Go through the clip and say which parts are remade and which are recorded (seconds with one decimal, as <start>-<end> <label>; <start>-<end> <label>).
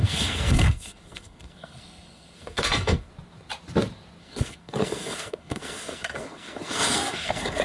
0.0-3.1 remade; 3.1-4.2 recorded; 4.2-7.6 remade